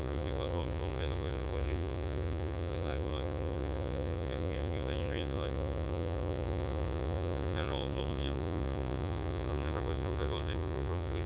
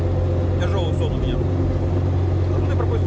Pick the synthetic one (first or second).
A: first